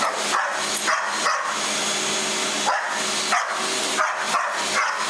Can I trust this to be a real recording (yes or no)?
yes